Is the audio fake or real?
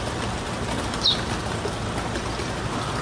real